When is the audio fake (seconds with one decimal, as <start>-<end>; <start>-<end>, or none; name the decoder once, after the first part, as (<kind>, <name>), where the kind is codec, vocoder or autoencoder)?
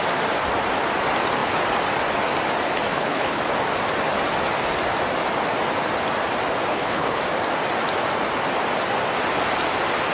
2.9-3.4 (codec, HILCodec); 6.7-7.2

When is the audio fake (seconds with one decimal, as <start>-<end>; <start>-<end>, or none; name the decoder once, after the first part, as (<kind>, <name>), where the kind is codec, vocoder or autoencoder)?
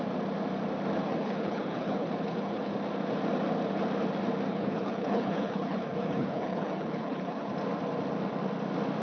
1.0-2.7 (codec, HILCodec); 4.5-7.5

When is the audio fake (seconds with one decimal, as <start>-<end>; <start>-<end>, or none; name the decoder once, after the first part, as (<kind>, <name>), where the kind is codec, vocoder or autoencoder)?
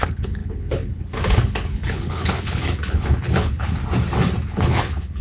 0.0-3.8 (codec, HILCodec); 4.5-5.2